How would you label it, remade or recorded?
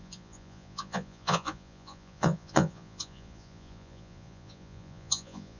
remade